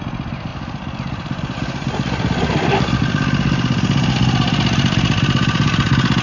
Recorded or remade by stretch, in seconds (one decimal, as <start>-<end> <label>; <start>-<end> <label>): 0.0-6.2 recorded